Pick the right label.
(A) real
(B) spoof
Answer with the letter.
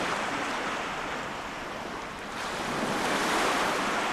A